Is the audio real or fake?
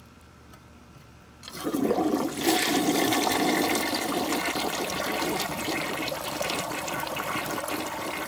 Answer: fake